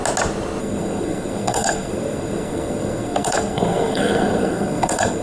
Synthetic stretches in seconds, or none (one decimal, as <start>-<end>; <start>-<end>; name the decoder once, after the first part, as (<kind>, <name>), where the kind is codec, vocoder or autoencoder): 0.6-5.2 (codec, SNAC)